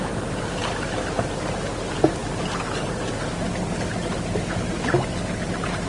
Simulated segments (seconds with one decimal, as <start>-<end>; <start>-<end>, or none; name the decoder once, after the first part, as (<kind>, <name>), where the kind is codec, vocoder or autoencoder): none

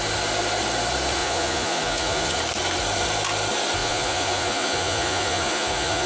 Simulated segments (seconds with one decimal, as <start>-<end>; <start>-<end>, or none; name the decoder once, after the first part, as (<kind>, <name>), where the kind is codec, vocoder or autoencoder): 1.2-2.4 (vocoder, Vocos); 3.8-6.1

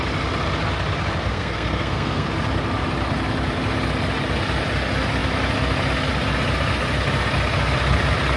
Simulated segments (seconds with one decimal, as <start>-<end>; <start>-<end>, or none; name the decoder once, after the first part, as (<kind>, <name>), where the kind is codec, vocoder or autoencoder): 1.3-2.3 (codec, SNAC)

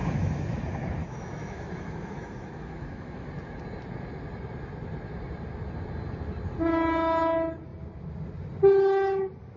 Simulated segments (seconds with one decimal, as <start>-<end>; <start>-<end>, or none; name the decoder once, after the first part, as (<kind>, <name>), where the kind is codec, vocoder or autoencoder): 0.0-0.6 (autoencoder, DAC-VAE); 1.0-3.3

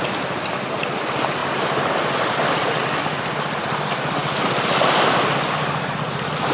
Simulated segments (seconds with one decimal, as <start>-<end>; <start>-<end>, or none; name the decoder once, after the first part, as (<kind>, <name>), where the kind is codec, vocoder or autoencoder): none

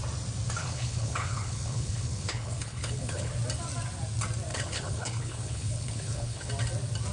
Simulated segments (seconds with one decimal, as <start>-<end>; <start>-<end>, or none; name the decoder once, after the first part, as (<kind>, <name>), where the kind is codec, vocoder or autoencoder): 0.6-3.3 (codec, HILCodec); 4.5-6.5

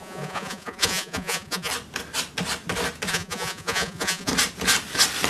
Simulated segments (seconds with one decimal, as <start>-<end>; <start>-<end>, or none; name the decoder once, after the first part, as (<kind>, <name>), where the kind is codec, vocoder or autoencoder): 0.0-1.7 (vocoder, Vocos); 3.1-4.3